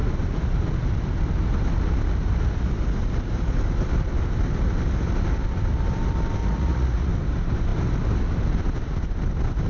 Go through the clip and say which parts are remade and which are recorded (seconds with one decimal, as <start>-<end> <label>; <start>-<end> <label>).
0.0-6.4 recorded; 6.4-7.1 remade; 7.1-9.7 recorded